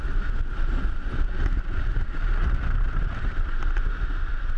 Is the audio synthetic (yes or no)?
no